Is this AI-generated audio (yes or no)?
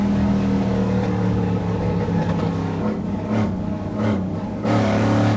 yes